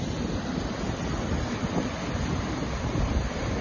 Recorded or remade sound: recorded